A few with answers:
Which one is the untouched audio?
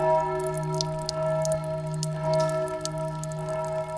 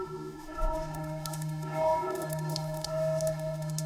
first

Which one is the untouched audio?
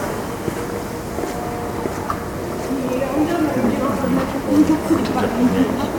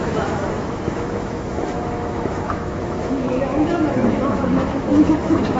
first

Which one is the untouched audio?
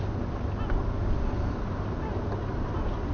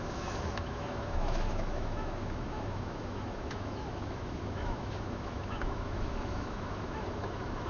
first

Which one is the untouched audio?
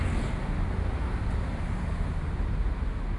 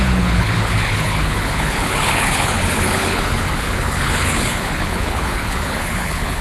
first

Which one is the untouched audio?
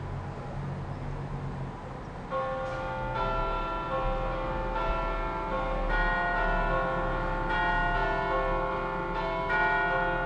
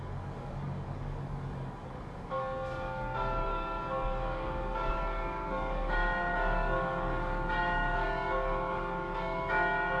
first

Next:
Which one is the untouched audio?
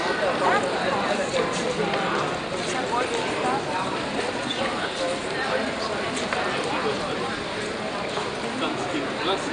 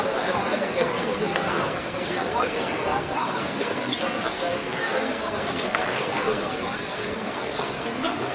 first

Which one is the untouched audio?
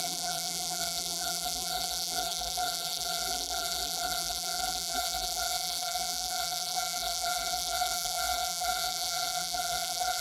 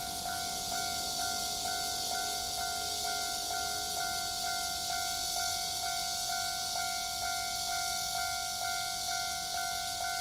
second